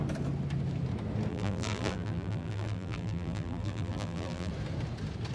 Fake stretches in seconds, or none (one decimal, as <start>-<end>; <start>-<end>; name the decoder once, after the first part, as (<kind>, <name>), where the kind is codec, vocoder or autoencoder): 1.3-4.5 (vocoder, BigVGAN v2)